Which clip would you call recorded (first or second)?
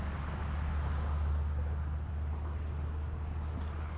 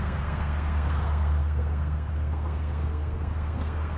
first